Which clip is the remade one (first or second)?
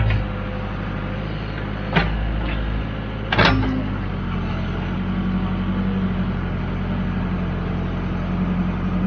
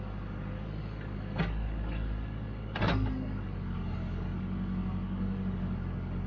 second